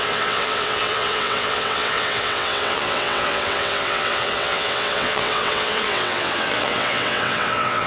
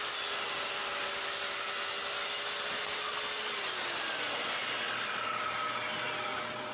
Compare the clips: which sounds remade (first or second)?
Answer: first